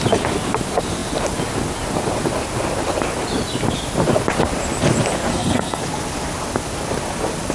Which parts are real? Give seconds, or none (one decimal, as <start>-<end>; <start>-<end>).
0.0-5.3; 5.8-7.5